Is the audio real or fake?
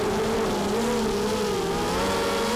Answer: real